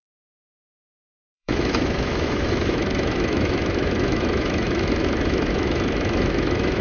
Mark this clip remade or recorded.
remade